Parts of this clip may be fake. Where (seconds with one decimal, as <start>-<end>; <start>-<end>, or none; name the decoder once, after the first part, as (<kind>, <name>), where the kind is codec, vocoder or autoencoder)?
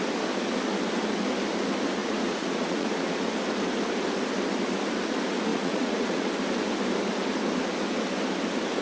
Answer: 2.0-3.3 (vocoder, Vocos); 5.5-6.3